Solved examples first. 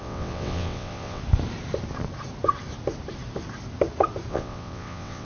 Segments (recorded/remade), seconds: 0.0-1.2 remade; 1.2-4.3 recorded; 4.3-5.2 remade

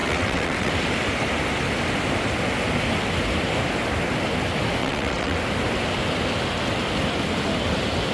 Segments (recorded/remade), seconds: 0.0-0.7 remade; 0.7-4.8 recorded; 4.8-5.4 remade; 5.4-8.1 recorded